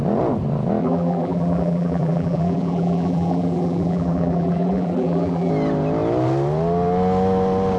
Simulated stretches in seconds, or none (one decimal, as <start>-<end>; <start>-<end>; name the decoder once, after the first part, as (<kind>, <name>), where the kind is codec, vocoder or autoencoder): 0.8-5.5 (vocoder, BigVGAN v2)